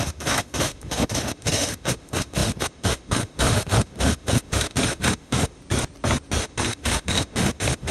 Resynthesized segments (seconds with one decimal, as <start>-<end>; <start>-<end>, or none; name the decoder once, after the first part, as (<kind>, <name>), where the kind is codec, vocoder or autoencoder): 0.0-5.6 (autoencoder, DAC-VAE); 6.4-7.9